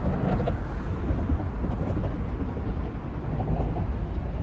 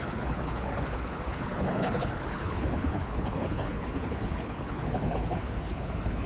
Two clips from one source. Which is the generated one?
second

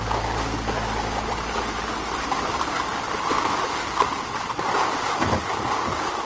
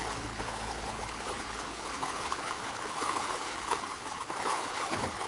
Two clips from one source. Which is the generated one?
second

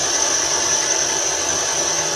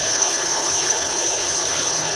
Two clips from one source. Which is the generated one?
second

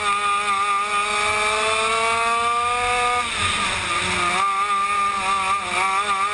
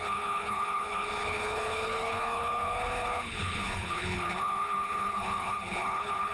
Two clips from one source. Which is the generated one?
second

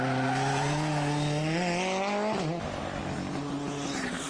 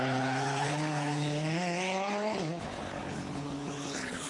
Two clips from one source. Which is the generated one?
second